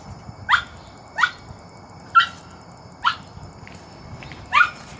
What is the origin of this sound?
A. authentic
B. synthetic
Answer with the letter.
A